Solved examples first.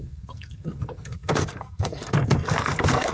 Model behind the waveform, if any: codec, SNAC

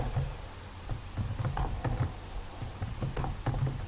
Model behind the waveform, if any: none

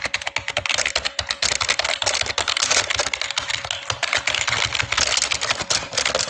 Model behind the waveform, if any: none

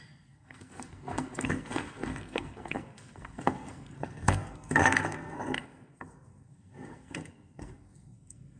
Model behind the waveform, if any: codec, SNAC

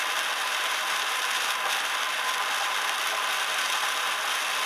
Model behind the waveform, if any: none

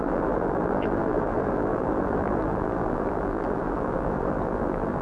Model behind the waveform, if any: vocoder, BigVGAN v2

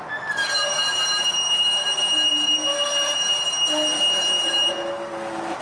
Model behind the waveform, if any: none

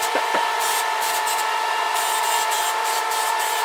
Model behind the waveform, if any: vocoder, BigVGAN v2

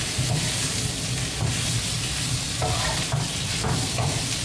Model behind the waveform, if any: none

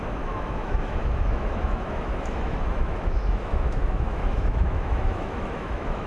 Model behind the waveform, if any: autoencoder, DAC-VAE